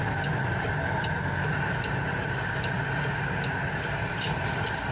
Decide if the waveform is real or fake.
real